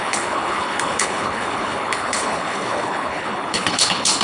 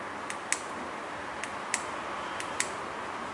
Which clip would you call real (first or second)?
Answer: second